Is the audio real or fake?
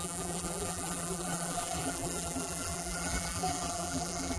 fake